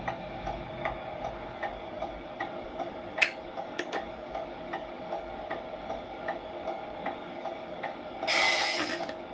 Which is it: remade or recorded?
remade